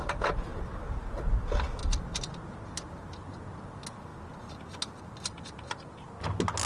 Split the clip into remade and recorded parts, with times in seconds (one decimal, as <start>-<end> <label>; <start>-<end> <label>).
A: 0.0-6.7 recorded